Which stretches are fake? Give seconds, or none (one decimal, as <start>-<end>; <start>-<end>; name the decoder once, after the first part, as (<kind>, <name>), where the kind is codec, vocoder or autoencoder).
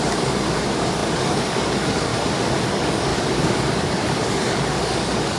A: 0.0-2.1 (codec, DAC); 2.7-5.4